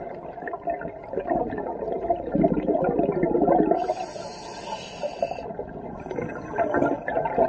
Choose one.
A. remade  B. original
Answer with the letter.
B